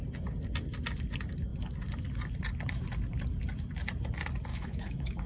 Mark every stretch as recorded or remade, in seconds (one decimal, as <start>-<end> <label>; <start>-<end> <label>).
0.0-4.5 recorded; 4.5-5.3 remade